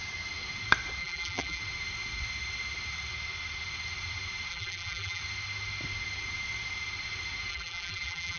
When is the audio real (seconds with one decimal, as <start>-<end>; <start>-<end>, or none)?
0.0-1.0; 1.6-4.5; 5.2-7.5